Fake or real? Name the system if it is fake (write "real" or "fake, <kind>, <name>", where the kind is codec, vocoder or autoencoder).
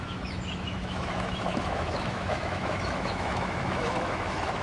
fake, autoencoder, DAC-VAE